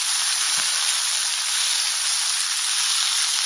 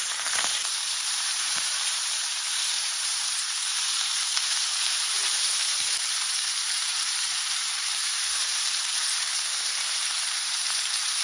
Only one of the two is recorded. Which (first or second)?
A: first